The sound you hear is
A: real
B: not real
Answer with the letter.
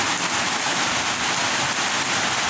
A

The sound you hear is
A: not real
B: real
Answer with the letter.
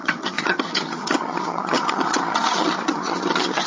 A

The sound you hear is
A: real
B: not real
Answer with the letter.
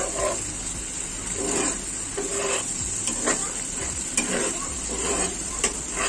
B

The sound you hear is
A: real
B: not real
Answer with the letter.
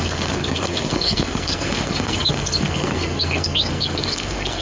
B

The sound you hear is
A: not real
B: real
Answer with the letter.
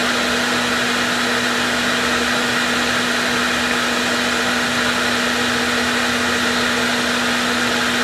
B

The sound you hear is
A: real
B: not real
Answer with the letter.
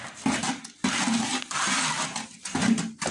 A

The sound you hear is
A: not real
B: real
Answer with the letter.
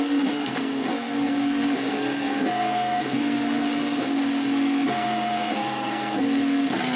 A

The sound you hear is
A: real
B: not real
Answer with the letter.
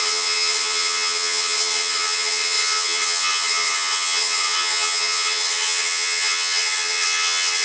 B